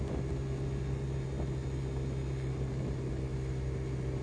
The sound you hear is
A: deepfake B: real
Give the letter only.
B